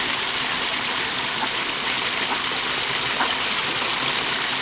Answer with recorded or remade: recorded